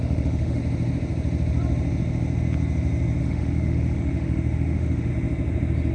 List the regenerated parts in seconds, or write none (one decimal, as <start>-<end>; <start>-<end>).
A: 0.0-0.6; 3.2-5.1